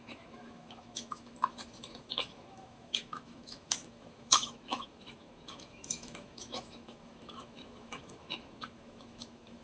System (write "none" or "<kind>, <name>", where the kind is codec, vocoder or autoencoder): autoencoder, DAC-VAE